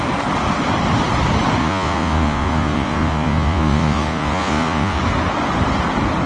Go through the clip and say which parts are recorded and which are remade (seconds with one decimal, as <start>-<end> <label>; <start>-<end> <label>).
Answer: 0.0-1.6 recorded; 1.6-5.0 remade; 5.0-6.3 recorded